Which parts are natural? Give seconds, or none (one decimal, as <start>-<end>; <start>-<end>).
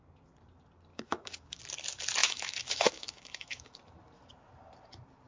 0.0-0.9; 1.6-2.2; 3.8-5.3